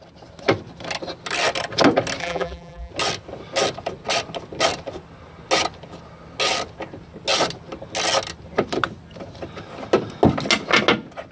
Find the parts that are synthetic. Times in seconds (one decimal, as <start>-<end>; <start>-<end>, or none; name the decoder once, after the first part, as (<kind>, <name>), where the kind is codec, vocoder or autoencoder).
2.2-2.9 (vocoder, BigVGAN v2)